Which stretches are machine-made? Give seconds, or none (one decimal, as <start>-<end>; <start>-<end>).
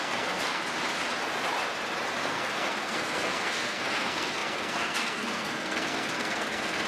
0.0-0.6; 2.2-6.9